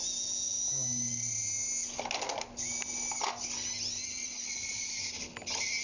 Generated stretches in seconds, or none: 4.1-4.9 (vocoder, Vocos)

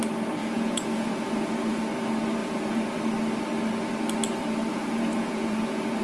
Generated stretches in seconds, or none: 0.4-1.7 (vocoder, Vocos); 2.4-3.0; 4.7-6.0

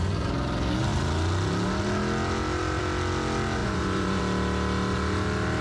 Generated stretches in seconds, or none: 3.6-4.2 (vocoder, Vocos)

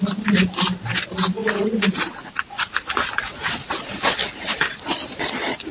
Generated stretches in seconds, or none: 1.4-4.8 (vocoder, Vocos)